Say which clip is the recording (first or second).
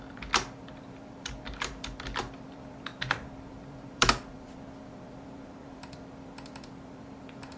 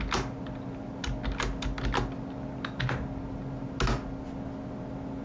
second